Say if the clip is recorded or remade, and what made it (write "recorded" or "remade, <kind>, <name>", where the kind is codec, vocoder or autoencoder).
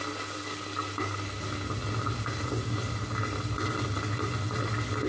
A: recorded